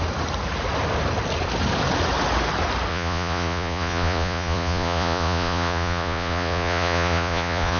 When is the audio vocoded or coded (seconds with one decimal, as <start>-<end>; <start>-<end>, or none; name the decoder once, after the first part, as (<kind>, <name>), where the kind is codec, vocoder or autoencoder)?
2.9-7.8 (vocoder, Vocos)